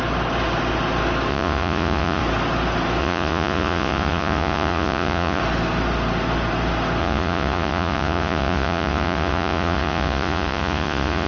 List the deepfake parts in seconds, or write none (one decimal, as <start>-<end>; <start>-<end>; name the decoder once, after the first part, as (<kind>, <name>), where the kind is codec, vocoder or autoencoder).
1.3-2.2 (vocoder, Vocos); 3.0-5.4; 7.0-11.3